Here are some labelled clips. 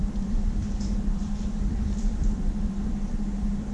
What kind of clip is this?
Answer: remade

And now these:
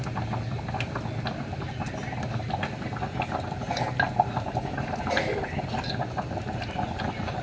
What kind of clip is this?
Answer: recorded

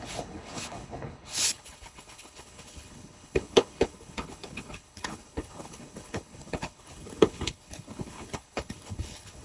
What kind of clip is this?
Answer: remade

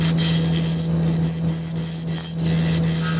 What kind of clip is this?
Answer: recorded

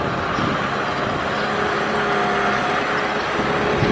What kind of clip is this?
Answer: recorded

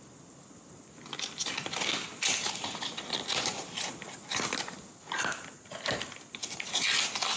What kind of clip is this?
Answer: recorded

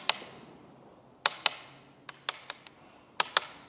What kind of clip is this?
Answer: recorded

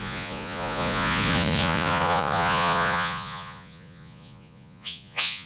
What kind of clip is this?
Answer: remade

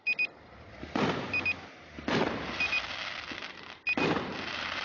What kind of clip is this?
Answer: recorded